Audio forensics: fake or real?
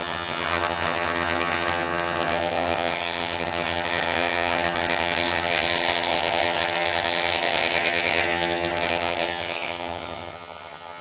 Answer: fake